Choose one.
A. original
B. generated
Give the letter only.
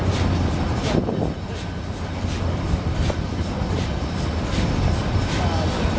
A